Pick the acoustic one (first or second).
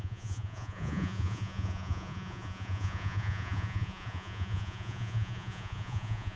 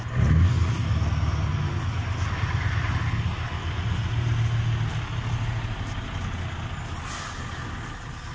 second